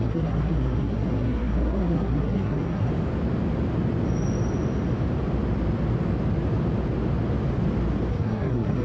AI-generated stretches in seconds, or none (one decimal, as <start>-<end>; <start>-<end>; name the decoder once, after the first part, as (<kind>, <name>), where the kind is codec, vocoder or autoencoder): 0.0-2.9 (codec, SNAC); 8.1-8.8